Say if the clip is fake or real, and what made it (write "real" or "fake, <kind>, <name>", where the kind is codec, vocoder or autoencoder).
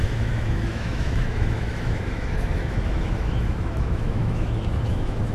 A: fake, autoencoder, DAC-VAE